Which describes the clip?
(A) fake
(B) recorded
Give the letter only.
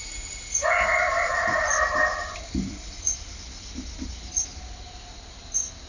B